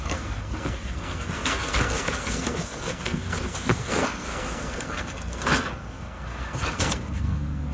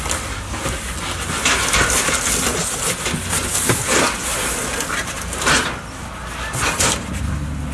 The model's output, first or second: first